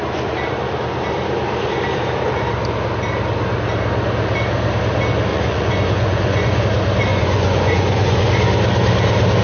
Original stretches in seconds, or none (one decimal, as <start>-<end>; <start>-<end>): 0.0-5.3; 6.6-7.1; 8.3-9.4